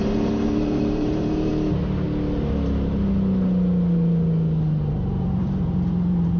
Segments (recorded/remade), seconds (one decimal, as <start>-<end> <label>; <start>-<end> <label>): 0.0-1.5 remade; 1.5-4.9 recorded; 4.9-6.4 remade